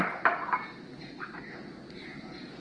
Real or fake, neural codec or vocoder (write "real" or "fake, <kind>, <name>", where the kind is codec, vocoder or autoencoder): real